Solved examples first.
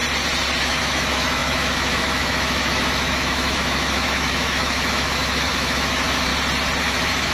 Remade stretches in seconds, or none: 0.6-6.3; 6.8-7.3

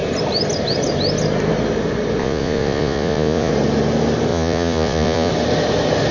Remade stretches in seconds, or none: 2.2-3.5; 4.3-5.3

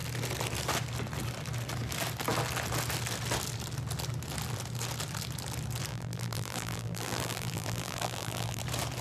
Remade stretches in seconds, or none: 5.9-8.6

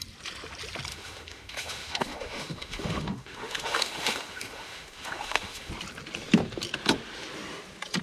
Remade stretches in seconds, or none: 0.9-5.7

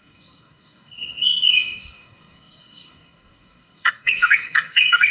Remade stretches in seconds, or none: 0.0-5.1

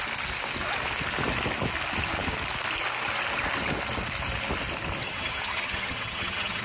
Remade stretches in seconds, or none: 5.0-6.6

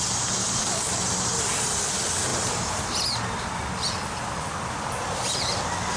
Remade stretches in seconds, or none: 0.4-0.9